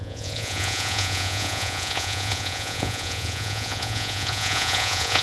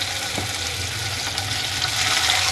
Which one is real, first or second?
second